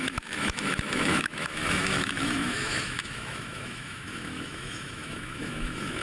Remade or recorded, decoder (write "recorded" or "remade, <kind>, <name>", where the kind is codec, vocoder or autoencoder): remade, autoencoder, DAC-VAE